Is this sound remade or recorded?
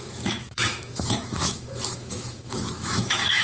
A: remade